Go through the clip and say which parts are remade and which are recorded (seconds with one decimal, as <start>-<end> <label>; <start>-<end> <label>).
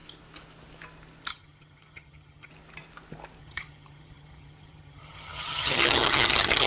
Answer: 0.0-1.3 recorded; 1.3-2.5 remade; 2.5-3.4 recorded; 3.4-6.7 remade